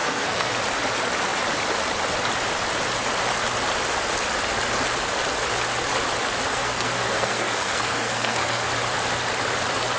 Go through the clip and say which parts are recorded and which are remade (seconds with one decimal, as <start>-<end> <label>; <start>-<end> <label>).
0.0-0.5 remade; 0.5-6.5 recorded; 6.5-8.7 remade; 8.7-10.0 recorded